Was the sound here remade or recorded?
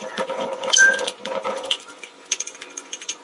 remade